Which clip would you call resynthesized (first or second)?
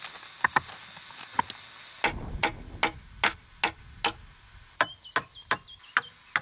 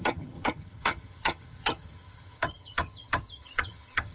second